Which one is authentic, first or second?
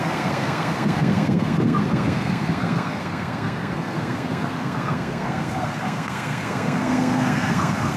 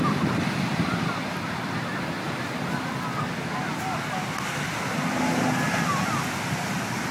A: second